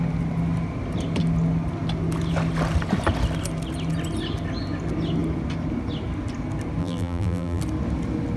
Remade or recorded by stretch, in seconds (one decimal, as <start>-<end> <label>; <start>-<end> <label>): 0.0-6.8 recorded; 6.8-7.6 remade; 7.6-8.4 recorded